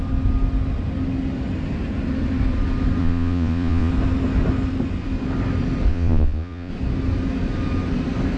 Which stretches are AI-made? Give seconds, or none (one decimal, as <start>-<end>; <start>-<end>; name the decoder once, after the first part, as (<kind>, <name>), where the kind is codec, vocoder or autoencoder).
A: 3.0-3.9 (vocoder, Vocos); 5.9-6.7